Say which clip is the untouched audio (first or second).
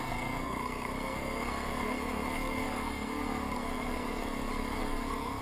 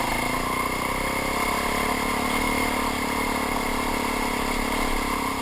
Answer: second